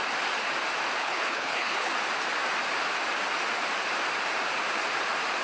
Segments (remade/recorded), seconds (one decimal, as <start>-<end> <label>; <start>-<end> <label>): 0.0-1.0 recorded; 1.0-1.9 remade; 1.9-5.4 recorded